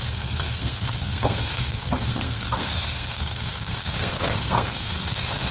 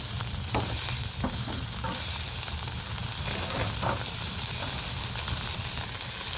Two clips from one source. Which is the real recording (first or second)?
second